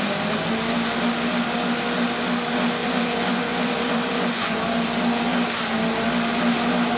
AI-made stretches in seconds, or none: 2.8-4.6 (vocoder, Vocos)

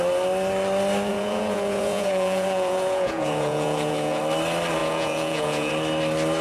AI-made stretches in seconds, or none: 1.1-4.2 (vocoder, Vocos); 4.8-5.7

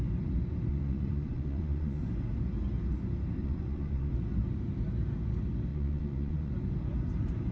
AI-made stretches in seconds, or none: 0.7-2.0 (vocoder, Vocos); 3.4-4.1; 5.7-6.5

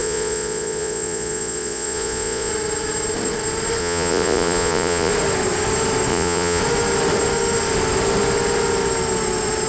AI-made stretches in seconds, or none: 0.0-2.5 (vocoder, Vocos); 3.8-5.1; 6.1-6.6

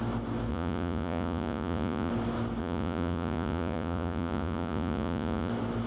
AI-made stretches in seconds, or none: 0.5-2.1 (vocoder, Vocos); 2.6-5.5